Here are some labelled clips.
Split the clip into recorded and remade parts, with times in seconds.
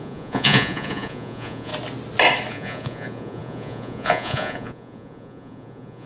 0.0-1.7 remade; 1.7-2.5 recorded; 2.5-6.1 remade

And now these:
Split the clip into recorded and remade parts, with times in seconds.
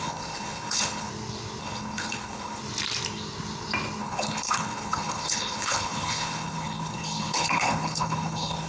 0.0-1.1 remade; 1.1-1.6 recorded; 1.6-2.6 remade; 2.6-4.0 recorded; 4.0-8.7 remade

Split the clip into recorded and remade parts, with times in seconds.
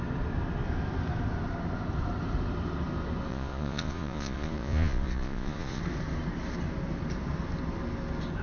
0.0-3.3 recorded; 3.3-5.8 remade; 5.8-8.4 recorded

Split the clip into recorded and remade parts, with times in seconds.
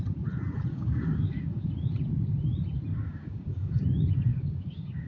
0.0-0.7 recorded; 0.7-1.7 remade; 1.7-2.9 recorded; 2.9-3.8 remade; 3.8-4.3 recorded; 4.3-5.1 remade